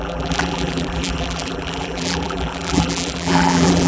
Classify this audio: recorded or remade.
remade